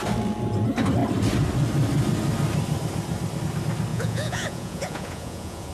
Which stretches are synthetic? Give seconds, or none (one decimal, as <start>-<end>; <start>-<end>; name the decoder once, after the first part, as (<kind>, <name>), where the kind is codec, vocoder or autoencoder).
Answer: 3.9-5.7 (vocoder, Vocos)